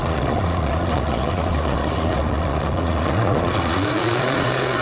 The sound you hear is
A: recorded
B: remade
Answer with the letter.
B